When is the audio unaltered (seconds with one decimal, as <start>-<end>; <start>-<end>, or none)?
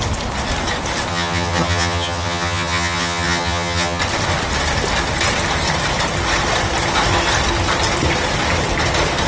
0.0-1.1; 4.0-9.3